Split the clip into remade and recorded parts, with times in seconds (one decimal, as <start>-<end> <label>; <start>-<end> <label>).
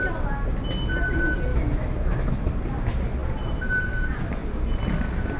0.0-1.5 recorded; 1.5-2.5 remade; 2.5-5.4 recorded